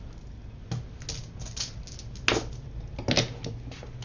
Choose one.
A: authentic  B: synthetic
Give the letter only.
A